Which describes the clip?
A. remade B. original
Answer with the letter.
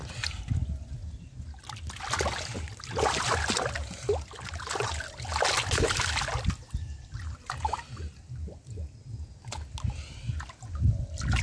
B